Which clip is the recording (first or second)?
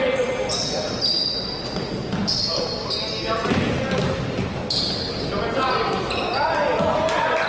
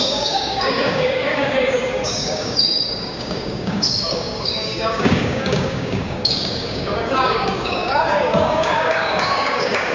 first